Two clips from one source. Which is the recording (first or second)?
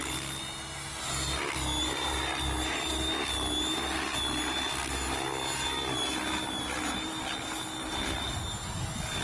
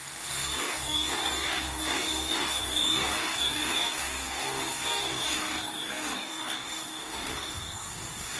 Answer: first